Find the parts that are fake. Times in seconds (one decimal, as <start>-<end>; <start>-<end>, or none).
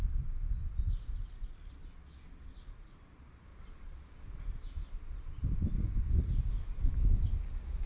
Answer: none